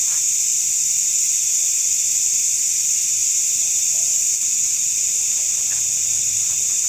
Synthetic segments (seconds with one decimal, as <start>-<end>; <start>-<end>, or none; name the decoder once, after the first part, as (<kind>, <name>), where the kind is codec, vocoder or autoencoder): 4.3-4.9 (vocoder, BigVGAN v2)